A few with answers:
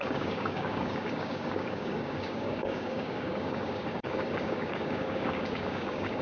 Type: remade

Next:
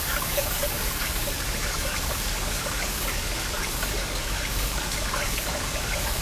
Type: remade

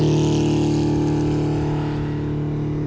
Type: recorded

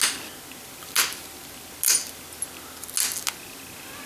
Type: recorded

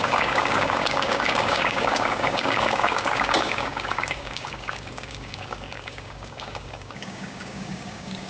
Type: remade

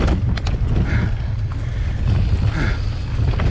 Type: recorded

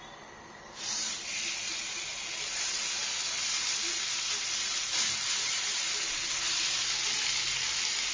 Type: recorded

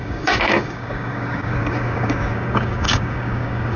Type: remade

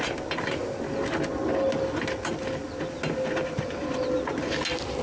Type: recorded